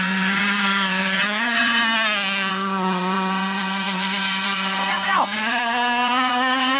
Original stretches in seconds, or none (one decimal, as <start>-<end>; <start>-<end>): 1.8-2.5